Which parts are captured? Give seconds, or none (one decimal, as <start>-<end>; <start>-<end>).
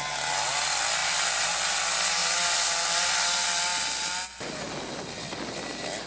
0.0-1.0; 1.8-2.2; 3.1-6.1